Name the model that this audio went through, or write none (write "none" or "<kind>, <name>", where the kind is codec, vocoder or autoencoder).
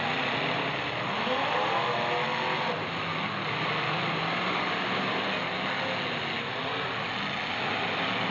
none